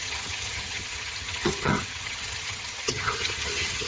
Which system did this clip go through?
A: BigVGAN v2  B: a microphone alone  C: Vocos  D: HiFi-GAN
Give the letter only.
D